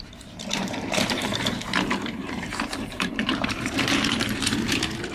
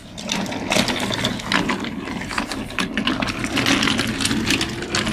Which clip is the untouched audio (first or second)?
second